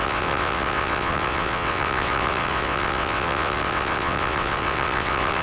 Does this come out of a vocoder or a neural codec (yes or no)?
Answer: yes